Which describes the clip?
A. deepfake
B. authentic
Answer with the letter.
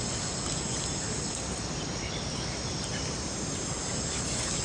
B